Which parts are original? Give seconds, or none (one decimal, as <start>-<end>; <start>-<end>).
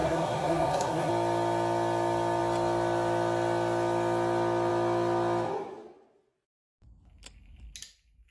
1.1-8.3